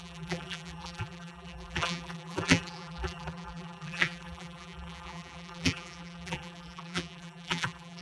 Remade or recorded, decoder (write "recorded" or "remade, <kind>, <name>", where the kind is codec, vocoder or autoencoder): remade, vocoder, BigVGAN v2